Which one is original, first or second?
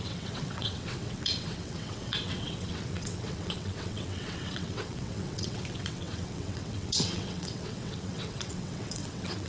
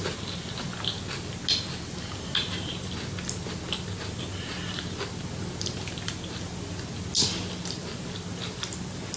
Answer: second